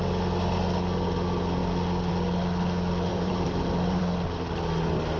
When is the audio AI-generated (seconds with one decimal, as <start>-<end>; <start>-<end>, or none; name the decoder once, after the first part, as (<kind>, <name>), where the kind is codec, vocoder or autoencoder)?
3.1-4.0 (vocoder, BigVGAN v2)